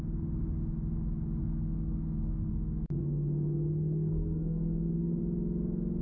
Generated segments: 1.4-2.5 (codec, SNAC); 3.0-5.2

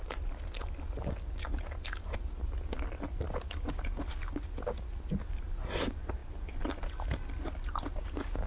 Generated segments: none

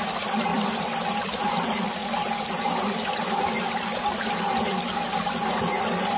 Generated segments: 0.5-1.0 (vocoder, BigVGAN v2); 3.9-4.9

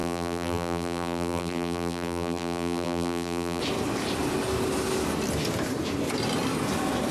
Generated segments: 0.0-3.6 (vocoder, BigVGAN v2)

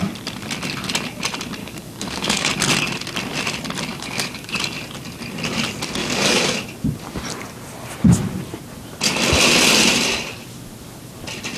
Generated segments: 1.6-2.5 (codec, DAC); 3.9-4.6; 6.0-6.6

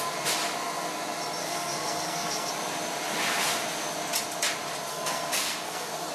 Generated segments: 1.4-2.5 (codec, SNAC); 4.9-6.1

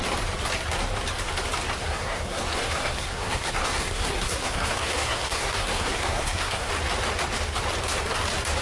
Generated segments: 1.8-6.7 (codec, SNAC)

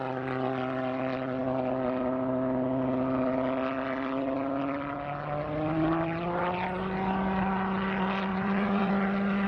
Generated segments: 8.3-8.9 (vocoder, WaveNeXt)